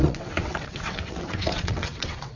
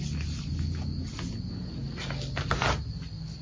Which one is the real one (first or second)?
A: second